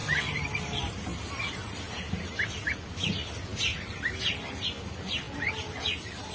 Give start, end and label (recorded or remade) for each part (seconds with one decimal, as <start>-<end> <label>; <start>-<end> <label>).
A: 0.0-1.4 remade; 1.4-6.3 recorded